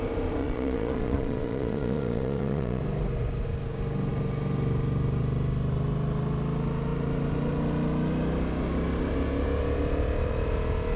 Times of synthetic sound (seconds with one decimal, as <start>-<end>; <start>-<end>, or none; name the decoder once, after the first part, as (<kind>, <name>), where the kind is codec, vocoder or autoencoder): 0.4-2.8 (vocoder, Vocos)

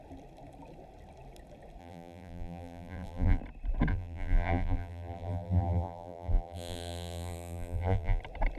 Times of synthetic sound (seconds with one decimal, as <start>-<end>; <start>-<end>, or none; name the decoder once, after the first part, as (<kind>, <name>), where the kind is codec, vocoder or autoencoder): 1.8-3.4 (vocoder, BigVGAN v2); 3.9-8.2

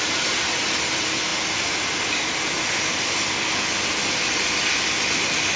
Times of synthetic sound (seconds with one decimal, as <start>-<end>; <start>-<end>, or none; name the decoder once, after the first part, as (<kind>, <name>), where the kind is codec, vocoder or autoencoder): none